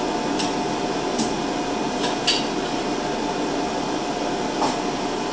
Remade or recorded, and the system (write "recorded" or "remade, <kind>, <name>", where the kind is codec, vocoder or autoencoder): recorded